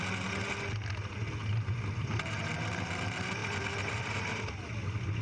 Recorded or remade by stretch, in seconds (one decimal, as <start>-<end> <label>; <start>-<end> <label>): 0.0-5.2 recorded